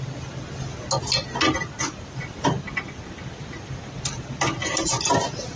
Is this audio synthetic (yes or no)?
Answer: no